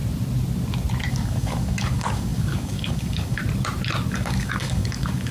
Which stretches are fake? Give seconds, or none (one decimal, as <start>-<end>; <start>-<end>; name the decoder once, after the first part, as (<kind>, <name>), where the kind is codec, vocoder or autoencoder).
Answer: 1.1-3.4 (codec, DAC); 4.1-5.3

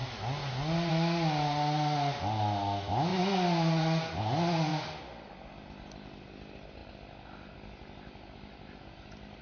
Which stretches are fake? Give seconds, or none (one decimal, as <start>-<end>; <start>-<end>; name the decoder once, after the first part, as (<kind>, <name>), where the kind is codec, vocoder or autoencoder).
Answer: none

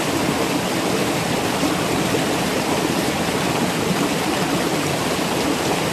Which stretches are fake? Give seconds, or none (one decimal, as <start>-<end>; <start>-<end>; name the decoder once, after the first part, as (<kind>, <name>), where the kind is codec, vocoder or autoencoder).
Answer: none